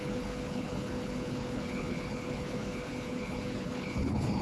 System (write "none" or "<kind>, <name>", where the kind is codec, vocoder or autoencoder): codec, HILCodec